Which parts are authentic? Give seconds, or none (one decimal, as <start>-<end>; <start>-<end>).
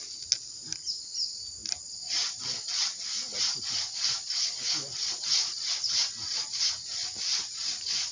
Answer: 0.0-8.1